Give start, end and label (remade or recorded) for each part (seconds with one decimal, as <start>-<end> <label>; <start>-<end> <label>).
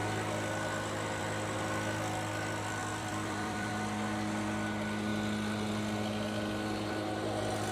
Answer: 0.0-2.8 recorded; 2.8-3.7 remade; 3.7-7.7 recorded